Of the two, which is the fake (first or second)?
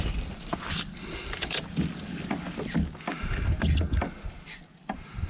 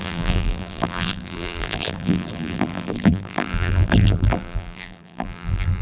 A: second